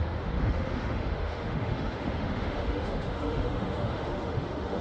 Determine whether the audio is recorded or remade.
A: remade